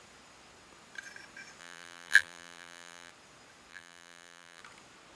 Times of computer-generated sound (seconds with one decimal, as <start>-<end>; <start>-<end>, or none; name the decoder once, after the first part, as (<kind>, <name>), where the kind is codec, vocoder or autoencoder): 1.6-3.1 (vocoder, BigVGAN v2); 3.7-4.6